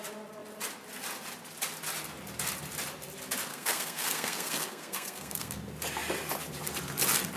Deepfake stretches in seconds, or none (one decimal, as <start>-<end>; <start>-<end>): 3.5-5.6